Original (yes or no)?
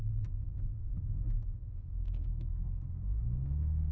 no